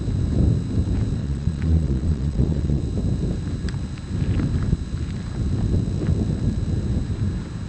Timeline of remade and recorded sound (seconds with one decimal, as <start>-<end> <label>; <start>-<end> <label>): 0.0-1.2 recorded; 1.2-2.8 remade; 2.8-7.7 recorded